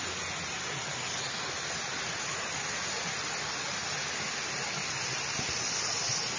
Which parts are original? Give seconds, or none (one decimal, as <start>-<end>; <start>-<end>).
0.0-6.4